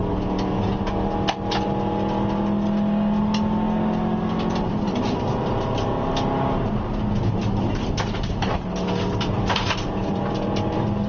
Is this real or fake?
real